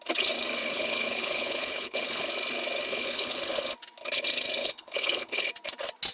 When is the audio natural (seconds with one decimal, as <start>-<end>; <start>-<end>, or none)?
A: 0.0-0.6; 2.3-2.9; 3.6-4.6; 5.5-6.1